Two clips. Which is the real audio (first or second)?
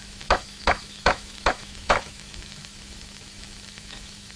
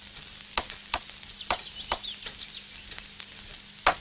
second